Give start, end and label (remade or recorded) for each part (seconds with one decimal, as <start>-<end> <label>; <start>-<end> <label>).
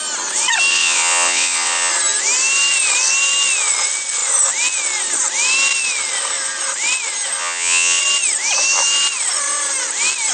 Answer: 0.0-0.7 recorded; 0.7-1.9 remade; 1.9-7.4 recorded; 7.4-8.0 remade; 8.0-10.3 recorded